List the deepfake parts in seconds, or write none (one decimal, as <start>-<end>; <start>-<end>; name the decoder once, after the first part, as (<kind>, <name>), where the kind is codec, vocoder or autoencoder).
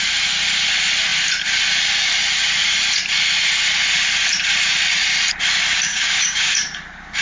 5.9-6.5 (codec, DAC)